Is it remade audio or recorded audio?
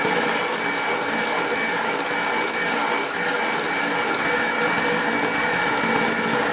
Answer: recorded